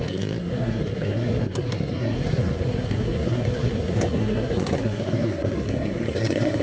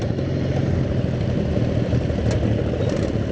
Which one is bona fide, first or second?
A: second